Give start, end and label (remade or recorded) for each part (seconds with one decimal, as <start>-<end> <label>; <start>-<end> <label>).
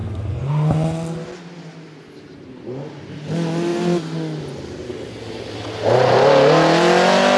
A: 0.0-7.4 recorded